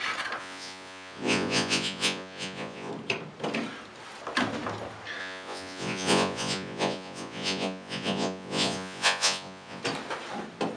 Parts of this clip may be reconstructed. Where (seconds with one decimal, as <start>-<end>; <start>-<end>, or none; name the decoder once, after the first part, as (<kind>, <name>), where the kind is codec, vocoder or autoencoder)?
0.4-2.9 (vocoder, Vocos); 5.2-9.8

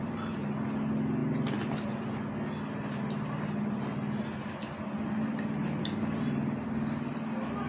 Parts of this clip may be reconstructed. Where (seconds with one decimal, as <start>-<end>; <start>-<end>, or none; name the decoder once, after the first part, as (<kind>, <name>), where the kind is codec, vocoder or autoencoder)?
none

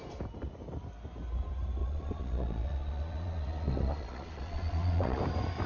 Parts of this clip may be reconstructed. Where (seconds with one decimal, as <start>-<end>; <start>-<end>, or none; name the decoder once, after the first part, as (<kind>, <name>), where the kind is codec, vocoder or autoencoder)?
1.8-5.2 (vocoder, Vocos)